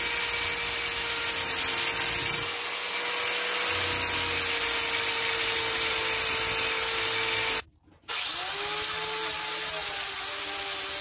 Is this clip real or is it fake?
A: real